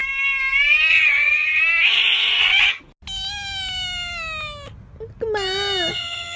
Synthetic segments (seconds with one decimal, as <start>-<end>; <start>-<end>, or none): 0.9-1.6; 2.4-2.8; 5.9-6.4